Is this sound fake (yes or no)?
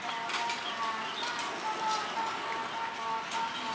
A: no